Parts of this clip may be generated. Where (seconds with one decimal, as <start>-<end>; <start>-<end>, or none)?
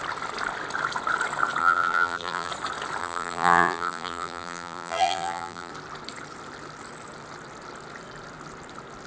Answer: 1.6-2.5; 3.0-5.7